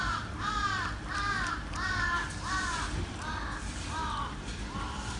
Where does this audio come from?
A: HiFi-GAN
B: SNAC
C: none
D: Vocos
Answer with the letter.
C